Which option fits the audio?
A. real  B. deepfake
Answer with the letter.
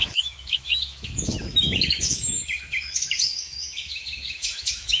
B